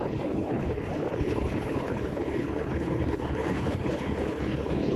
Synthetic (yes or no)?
yes